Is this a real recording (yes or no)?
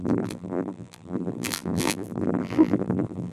no